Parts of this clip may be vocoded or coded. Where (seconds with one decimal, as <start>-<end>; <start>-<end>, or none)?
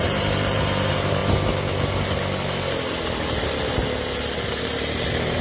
0.0-1.2; 4.4-5.4